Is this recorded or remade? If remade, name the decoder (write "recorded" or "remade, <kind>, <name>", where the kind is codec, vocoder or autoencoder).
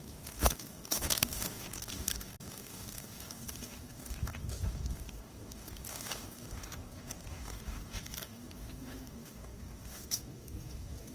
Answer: remade, codec, DAC